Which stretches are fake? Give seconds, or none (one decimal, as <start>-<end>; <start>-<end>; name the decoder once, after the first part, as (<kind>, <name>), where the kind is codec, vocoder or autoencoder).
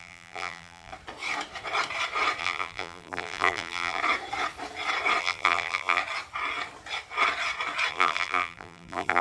0.0-0.9 (vocoder, BigVGAN v2); 2.4-4.0; 5.2-6.0; 7.9-9.2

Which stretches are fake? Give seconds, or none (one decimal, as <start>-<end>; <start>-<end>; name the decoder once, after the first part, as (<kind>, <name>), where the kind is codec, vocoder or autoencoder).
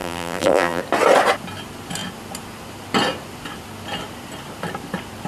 0.0-0.8 (vocoder, BigVGAN v2)